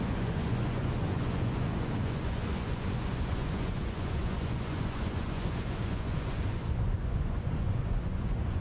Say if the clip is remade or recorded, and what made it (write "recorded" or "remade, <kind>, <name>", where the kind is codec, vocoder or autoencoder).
remade, vocoder, Vocos